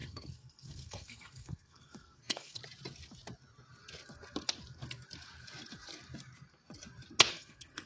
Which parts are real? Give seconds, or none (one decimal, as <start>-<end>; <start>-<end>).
2.6-7.3